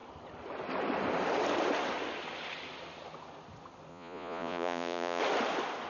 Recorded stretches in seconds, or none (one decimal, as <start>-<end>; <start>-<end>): 0.0-3.9; 5.2-5.9